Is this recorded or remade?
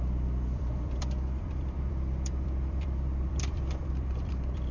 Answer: remade